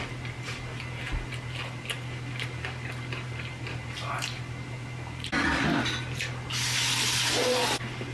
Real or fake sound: real